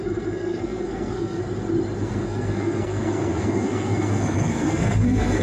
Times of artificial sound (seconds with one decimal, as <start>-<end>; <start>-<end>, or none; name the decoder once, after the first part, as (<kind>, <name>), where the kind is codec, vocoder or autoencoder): 0.0-1.4 (codec, SNAC); 2.0-5.4